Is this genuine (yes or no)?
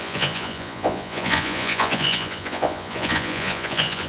no